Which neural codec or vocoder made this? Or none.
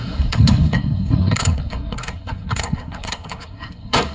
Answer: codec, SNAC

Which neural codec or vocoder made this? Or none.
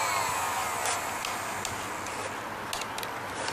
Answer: none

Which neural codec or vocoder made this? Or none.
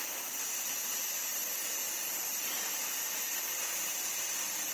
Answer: vocoder, BigVGAN v2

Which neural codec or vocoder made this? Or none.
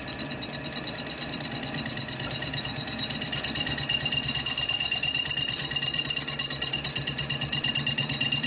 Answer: vocoder, BigVGAN v2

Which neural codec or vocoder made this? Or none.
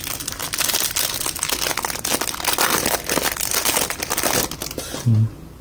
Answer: none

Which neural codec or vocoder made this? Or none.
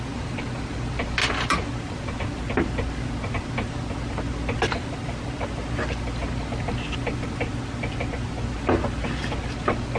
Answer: none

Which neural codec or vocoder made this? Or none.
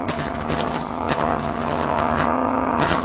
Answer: vocoder, HiFi-GAN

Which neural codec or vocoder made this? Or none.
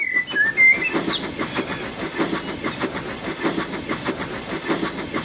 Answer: none